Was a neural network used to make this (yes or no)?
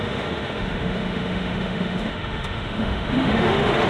yes